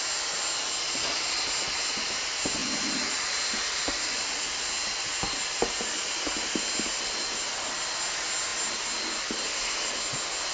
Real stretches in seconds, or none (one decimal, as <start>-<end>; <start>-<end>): 0.0-10.5